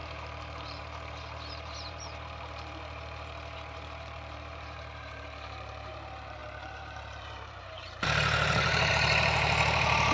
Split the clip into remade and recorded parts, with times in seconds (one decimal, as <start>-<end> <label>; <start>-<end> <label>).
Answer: 0.0-10.1 remade